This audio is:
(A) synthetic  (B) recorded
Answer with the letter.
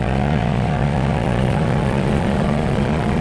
A